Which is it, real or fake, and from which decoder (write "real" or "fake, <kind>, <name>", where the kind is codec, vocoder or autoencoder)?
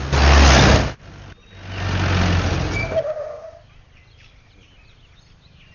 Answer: real